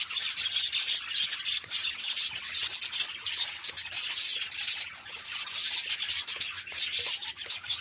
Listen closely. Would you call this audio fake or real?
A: real